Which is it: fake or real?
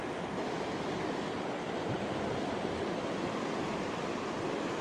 real